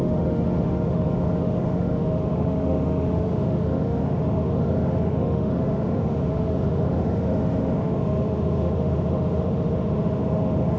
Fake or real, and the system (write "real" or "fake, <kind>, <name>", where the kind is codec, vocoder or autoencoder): fake, autoencoder, DAC-VAE